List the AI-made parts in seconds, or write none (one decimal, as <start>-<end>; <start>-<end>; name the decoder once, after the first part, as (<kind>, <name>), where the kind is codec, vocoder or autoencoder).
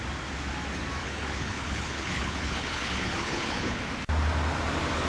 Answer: 1.0-3.8 (codec, HILCodec)